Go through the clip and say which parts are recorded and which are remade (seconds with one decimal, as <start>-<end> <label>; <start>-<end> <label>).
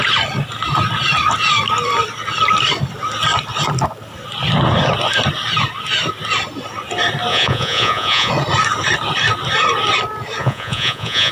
0.0-7.3 recorded; 7.3-8.3 remade; 8.3-10.4 recorded; 10.4-11.3 remade